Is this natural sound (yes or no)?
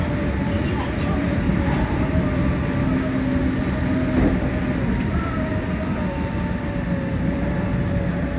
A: yes